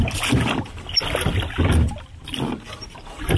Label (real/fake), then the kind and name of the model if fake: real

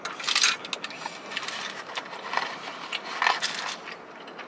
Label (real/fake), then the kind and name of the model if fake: real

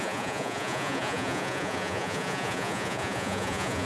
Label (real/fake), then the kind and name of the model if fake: fake, vocoder, Vocos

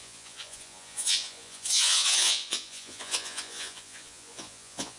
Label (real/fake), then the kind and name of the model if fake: fake, vocoder, Vocos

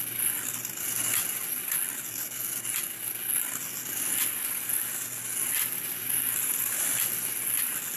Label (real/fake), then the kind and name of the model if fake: real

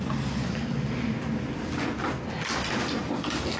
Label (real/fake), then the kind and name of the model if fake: real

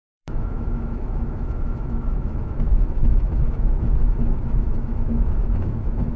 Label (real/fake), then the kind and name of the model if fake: fake, autoencoder, DAC-VAE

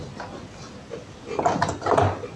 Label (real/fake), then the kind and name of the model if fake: real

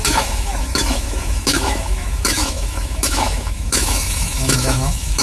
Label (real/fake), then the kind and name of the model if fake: fake, autoencoder, DAC-VAE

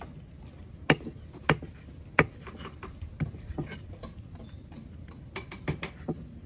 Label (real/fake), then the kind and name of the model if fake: real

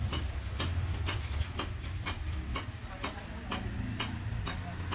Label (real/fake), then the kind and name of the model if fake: real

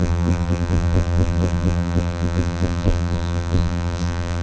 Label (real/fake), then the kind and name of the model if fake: fake, vocoder, BigVGAN v2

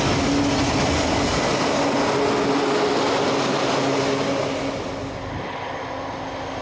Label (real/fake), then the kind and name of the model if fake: real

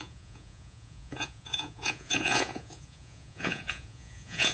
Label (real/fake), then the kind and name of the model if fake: fake, vocoder, Vocos